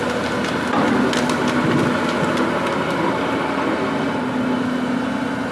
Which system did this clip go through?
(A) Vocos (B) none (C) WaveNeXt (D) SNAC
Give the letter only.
B